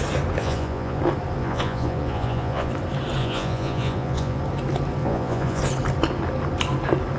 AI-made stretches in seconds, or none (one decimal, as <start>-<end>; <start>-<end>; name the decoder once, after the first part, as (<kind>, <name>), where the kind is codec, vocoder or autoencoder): 0.4-1.0 (vocoder, Vocos); 1.4-2.7; 3.2-4.4; 5.0-5.6